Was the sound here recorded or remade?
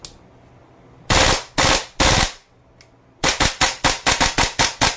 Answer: recorded